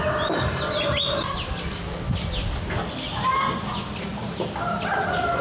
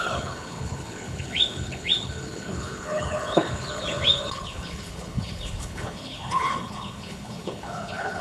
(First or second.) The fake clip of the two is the second